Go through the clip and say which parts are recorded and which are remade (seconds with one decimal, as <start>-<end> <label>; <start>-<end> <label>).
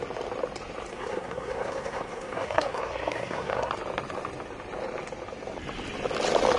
0.0-0.9 recorded; 0.9-3.7 remade; 3.7-6.6 recorded